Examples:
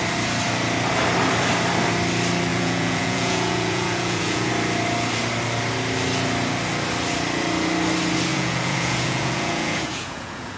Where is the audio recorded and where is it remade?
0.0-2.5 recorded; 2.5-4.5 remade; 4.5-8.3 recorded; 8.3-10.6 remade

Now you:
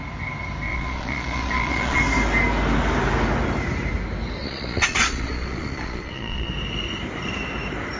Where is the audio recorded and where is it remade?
0.0-0.7 recorded; 0.7-2.0 remade; 2.0-4.4 recorded; 4.4-6.5 remade; 6.5-8.0 recorded

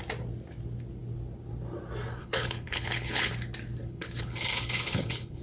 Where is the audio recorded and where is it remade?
0.0-2.2 recorded; 2.2-3.3 remade; 3.3-3.8 recorded; 3.8-5.4 remade